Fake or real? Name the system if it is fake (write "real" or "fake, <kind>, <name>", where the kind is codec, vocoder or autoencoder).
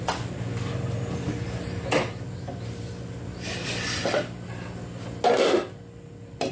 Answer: real